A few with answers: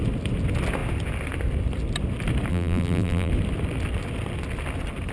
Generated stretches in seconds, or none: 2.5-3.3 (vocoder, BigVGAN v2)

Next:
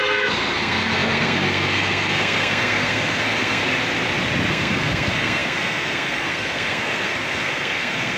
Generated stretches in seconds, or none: 0.0-3.6 (codec, SNAC); 4.5-8.2

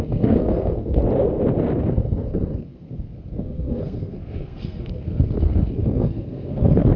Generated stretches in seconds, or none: 0.0-1.0 (codec, SNAC); 1.9-7.0

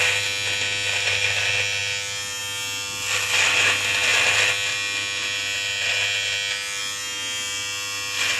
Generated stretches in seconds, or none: none